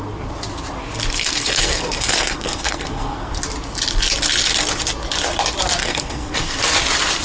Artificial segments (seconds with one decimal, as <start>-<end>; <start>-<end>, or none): 1.2-3.4; 5.8-6.6